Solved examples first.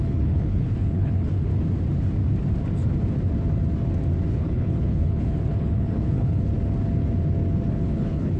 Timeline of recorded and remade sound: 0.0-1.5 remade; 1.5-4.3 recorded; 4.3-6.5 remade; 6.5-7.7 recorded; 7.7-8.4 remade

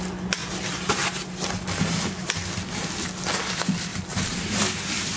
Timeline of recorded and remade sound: 0.0-0.4 recorded; 0.4-3.0 remade; 3.0-3.9 recorded; 3.9-4.6 remade; 4.6-5.2 recorded

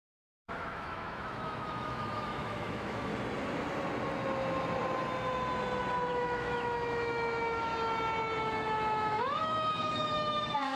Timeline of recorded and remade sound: 0.0-3.1 remade; 3.1-6.1 recorded; 6.1-7.7 remade; 7.7-8.4 recorded; 8.4-10.8 remade

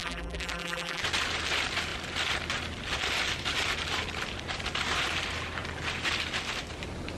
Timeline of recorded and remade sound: 0.0-1.0 remade; 1.0-7.2 recorded

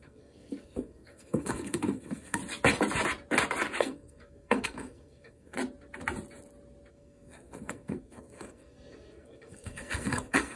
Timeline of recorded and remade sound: 0.0-2.4 remade; 2.4-3.8 recorded; 3.8-5.6 remade; 5.6-6.9 recorded; 6.9-10.6 remade